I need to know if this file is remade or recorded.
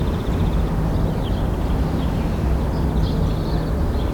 recorded